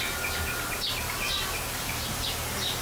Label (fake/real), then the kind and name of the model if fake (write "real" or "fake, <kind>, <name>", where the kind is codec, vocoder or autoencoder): real